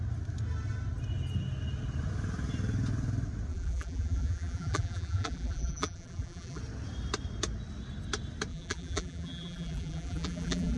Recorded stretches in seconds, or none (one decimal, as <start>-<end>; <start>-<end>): 0.0-3.5; 6.6-8.5